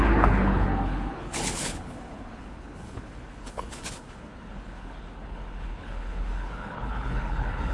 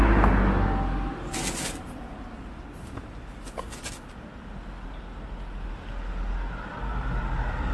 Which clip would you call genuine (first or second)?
second